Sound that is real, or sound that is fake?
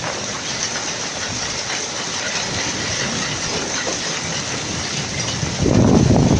real